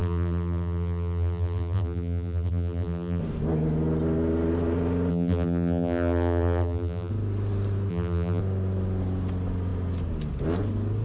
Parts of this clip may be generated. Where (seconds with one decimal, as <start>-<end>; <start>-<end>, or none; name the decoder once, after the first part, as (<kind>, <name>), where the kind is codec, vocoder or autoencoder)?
0.0-3.2 (vocoder, BigVGAN v2); 5.1-7.1; 7.9-8.4